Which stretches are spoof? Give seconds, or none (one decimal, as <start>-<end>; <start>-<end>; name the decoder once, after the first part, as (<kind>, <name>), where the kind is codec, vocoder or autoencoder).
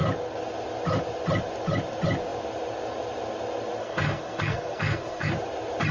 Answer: 3.8-5.3 (codec, SNAC)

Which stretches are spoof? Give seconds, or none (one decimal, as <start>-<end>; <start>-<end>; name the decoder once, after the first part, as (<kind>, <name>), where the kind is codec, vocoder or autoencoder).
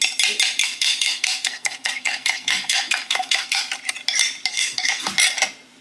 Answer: 0.6-3.6 (codec, SNAC); 4.5-5.1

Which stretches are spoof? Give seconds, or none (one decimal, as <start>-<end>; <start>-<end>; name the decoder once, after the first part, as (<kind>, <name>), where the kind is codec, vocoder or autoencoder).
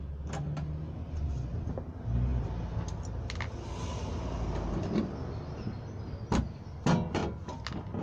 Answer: none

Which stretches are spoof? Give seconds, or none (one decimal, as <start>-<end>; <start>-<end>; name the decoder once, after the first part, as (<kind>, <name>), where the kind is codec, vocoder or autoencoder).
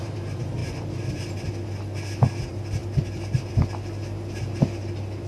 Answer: none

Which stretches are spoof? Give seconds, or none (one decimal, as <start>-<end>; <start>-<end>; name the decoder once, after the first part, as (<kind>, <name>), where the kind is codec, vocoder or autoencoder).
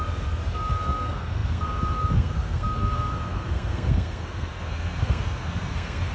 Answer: 0.0-6.1 (codec, SNAC)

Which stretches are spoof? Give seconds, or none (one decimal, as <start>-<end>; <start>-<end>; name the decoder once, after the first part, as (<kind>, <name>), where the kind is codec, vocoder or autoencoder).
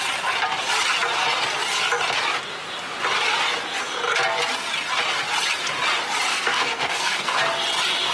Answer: 6.3-7.4 (codec, SNAC)